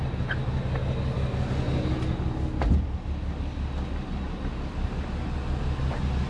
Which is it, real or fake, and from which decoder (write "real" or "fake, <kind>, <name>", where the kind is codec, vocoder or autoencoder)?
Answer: real